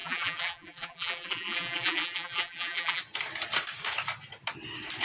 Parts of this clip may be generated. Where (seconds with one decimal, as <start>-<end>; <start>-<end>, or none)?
0.0-3.0